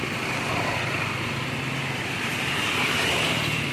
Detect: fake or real fake